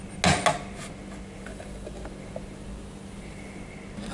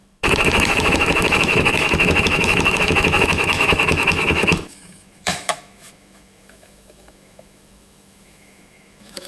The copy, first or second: second